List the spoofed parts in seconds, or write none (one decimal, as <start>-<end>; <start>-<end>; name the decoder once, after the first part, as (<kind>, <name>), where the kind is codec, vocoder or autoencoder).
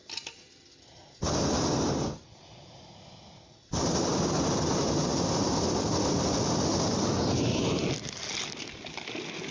none